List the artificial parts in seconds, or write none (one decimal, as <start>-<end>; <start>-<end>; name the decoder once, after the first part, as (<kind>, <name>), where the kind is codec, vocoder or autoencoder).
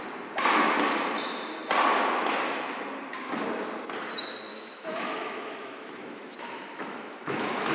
4.5-7.7 (autoencoder, DAC-VAE)